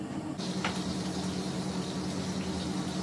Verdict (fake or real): real